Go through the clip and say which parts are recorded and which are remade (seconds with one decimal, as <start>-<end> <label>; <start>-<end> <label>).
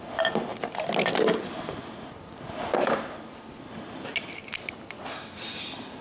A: 0.0-6.0 recorded